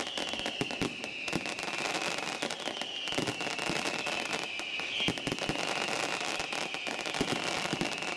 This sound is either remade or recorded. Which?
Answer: recorded